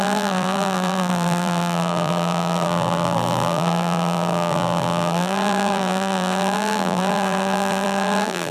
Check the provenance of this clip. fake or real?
fake